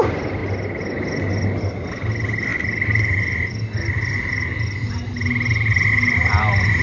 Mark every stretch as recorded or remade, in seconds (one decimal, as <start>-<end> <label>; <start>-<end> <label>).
0.0-6.8 recorded

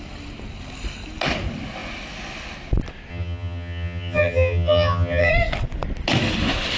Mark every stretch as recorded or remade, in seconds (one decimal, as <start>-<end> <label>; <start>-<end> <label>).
0.0-3.1 recorded; 3.1-5.3 remade; 5.3-6.8 recorded

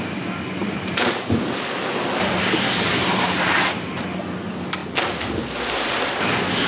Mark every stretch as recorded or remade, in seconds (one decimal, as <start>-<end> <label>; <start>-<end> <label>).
0.0-0.6 recorded; 0.6-1.8 remade; 1.8-6.7 recorded

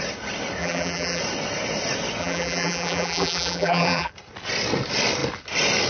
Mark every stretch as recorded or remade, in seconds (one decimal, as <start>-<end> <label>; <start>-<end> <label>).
0.0-0.6 recorded; 0.6-1.2 remade; 1.2-2.2 recorded; 2.2-4.1 remade; 4.1-5.9 recorded

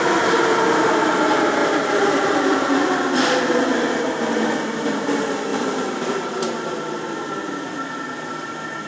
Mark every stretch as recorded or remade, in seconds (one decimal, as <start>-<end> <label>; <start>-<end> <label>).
0.0-1.6 recorded; 1.6-3.4 remade; 3.4-5.5 recorded; 5.5-7.9 remade; 7.9-8.9 recorded

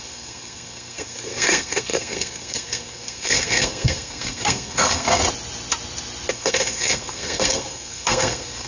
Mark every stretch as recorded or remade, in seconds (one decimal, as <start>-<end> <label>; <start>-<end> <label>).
0.0-5.2 remade; 5.2-6.3 recorded; 6.3-8.7 remade